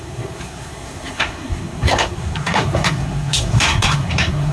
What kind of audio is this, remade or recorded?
remade